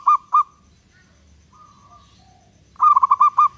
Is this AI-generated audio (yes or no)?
no